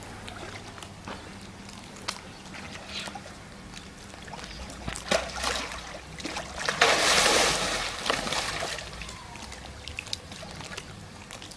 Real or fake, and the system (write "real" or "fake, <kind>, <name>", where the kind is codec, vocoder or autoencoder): real